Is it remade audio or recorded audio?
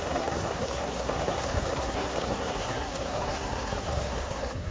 remade